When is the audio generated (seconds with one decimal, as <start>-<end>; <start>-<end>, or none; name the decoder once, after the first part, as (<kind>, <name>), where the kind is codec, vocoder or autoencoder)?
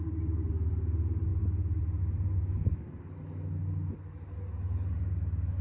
none